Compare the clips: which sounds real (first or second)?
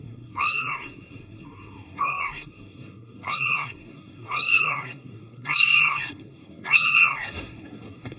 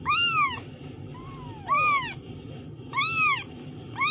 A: second